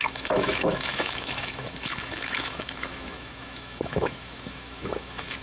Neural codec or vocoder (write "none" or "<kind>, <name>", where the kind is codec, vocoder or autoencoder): autoencoder, DAC-VAE